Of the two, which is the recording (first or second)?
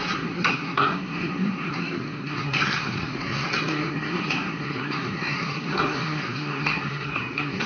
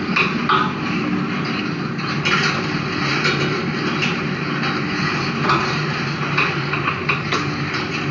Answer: second